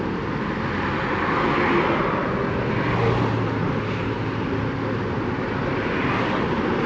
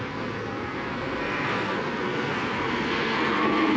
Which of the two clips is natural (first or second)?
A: first